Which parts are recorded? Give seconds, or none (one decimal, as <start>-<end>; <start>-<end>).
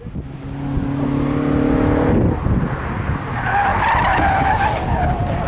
0.0-5.5